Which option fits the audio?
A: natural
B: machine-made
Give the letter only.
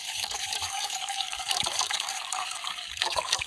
B